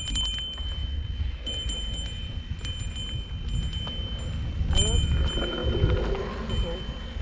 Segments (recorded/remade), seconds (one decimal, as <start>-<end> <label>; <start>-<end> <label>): 0.0-7.2 recorded